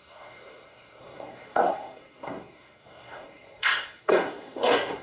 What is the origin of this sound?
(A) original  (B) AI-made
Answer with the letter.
B